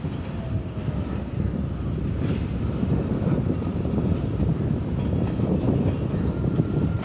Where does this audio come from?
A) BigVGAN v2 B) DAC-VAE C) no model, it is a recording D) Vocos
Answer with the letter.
A